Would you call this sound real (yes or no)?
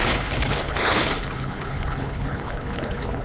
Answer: no